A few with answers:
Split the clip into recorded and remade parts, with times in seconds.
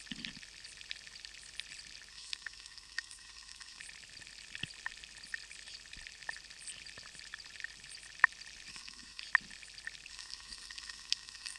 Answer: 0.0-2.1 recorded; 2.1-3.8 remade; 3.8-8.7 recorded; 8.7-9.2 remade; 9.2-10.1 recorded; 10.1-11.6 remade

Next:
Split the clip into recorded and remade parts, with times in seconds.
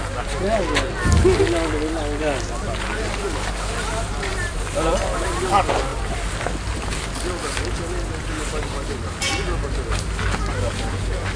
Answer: 0.0-4.3 recorded; 4.3-5.4 remade; 5.4-11.4 recorded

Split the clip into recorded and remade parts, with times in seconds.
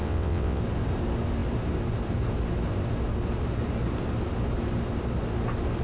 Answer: 0.0-0.6 remade; 0.6-5.8 recorded